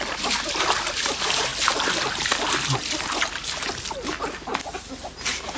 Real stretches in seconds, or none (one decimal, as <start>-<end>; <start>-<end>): 0.0-5.6